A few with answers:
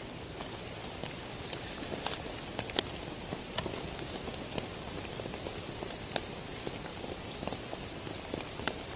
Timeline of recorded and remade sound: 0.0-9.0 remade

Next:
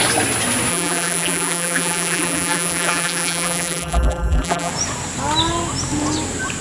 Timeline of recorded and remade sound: 0.0-0.7 recorded; 0.7-4.7 remade; 4.7-6.6 recorded